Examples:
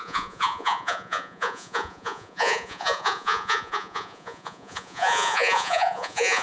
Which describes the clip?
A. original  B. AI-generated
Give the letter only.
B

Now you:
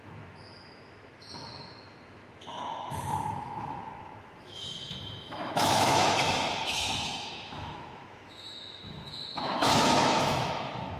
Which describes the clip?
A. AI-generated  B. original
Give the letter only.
A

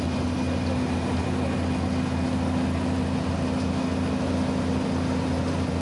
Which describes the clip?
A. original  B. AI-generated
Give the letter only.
A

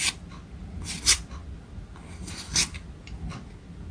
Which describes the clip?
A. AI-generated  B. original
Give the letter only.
B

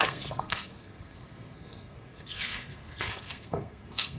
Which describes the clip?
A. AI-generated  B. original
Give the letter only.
A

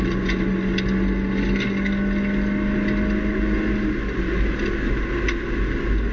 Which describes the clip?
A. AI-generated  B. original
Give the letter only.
B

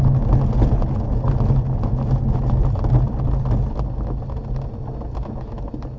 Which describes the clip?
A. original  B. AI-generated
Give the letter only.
A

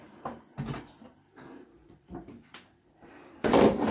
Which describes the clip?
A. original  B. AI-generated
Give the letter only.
B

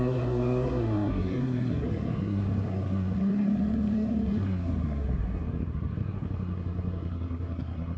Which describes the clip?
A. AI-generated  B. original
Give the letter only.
A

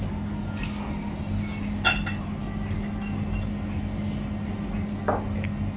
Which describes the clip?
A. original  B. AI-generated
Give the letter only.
A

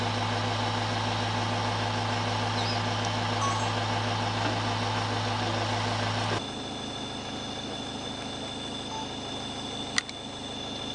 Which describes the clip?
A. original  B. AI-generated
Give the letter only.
A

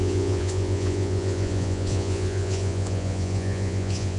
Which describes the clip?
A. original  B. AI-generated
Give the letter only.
B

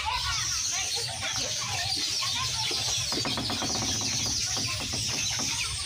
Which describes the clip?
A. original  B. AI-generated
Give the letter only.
A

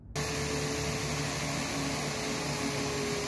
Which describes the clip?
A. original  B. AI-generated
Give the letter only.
A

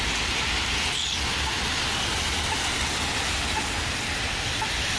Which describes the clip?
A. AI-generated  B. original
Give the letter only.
B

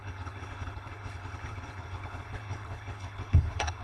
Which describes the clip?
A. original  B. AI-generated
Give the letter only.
B